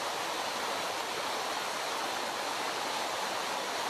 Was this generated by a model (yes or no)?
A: no